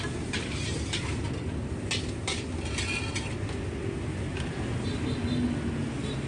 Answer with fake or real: real